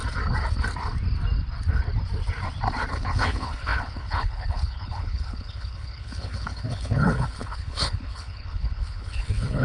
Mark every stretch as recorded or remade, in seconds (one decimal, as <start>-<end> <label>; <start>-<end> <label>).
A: 0.0-2.9 recorded; 2.9-9.6 remade